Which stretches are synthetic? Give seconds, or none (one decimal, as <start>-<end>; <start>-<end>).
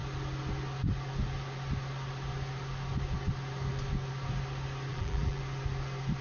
4.9-5.4